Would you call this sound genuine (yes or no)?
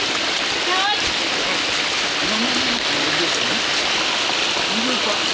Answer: yes